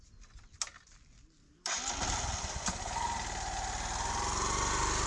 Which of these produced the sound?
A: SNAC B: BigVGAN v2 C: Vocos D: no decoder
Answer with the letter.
D